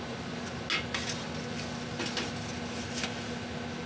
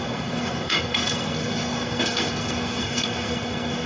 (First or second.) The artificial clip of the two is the second